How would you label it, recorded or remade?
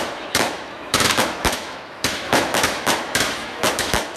remade